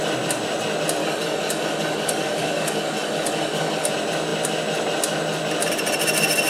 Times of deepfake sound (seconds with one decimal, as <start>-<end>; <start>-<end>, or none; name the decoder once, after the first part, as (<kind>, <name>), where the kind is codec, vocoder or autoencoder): 1.0-3.9 (codec, DAC)